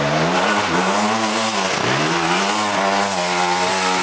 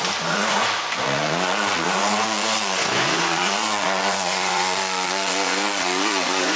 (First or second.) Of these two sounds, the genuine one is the first